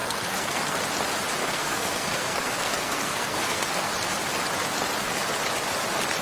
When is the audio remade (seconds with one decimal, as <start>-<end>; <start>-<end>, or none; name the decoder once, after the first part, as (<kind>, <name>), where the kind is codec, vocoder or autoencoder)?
0.0-0.8 (codec, SNAC); 1.4-3.9